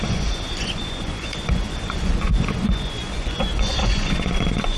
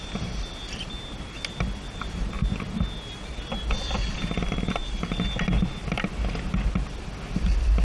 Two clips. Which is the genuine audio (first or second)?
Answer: second